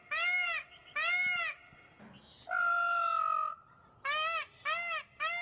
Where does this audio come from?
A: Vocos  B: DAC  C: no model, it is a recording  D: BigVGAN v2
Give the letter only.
C